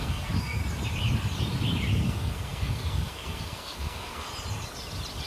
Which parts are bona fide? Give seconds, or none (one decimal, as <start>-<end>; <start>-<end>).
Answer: 0.6-1.9; 4.3-5.3